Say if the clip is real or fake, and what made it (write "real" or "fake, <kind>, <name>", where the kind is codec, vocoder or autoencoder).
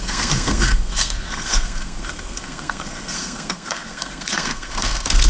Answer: fake, codec, SNAC